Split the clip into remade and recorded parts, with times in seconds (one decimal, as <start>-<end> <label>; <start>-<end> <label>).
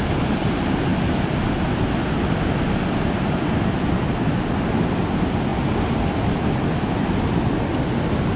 0.0-8.4 recorded